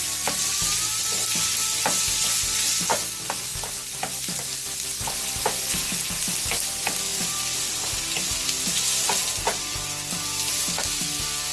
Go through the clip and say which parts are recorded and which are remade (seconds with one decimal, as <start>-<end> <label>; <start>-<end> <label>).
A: 0.0-11.5 recorded